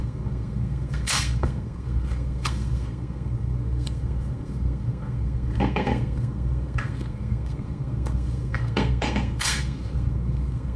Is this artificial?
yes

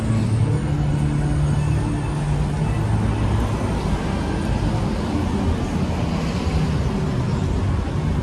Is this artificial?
no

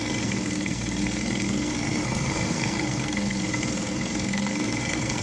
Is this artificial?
yes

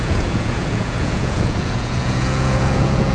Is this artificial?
yes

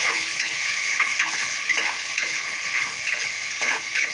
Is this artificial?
yes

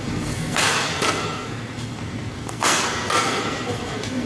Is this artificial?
yes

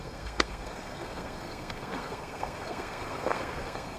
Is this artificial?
yes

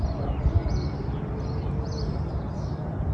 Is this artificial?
no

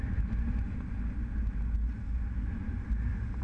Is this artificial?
no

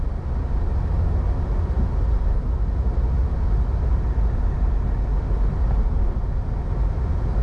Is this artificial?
no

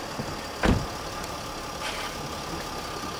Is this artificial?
no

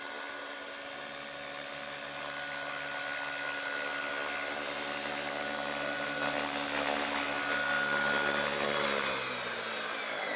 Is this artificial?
no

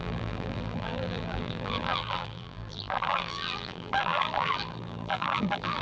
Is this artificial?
yes